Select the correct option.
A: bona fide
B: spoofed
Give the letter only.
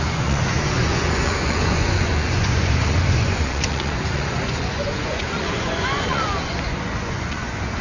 B